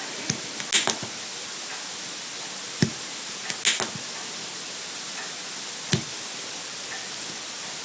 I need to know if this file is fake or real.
real